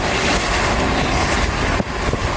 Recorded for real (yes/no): yes